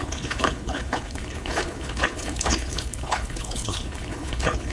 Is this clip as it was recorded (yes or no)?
no